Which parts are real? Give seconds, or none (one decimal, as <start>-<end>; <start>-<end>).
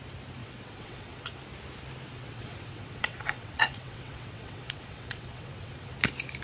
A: 0.0-0.4; 1.3-2.1; 5.9-6.4